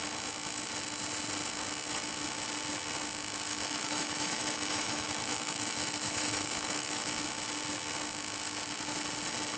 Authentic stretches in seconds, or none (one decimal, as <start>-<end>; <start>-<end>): 0.0-3.5; 7.2-9.6